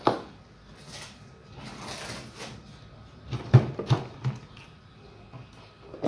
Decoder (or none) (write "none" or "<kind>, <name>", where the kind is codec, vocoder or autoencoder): none